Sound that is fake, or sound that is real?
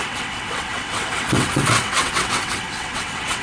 fake